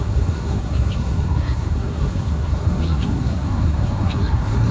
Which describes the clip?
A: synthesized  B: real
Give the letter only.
A